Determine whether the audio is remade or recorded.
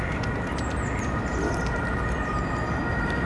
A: recorded